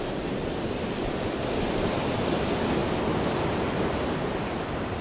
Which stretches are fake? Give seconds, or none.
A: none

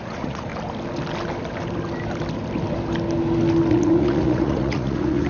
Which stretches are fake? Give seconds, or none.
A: 0.0-0.5 (vocoder, Vocos); 3.7-5.3

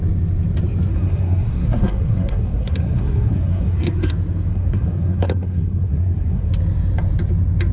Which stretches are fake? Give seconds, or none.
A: 0.9-4.1 (codec, SNAC); 4.5-6.5

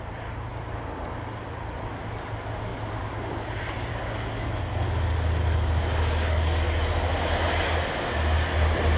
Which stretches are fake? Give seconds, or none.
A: 3.9-6.7 (codec, DAC)

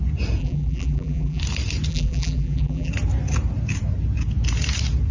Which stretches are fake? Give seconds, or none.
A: 0.4-1.4 (vocoder, BigVGAN v2); 1.9-2.9

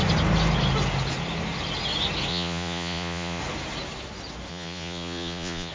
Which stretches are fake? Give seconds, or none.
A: 2.3-3.4 (vocoder, Vocos); 4.5-5.7

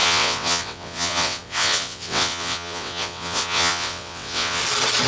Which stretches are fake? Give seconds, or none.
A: 0.0-4.6 (vocoder, WaveNeXt)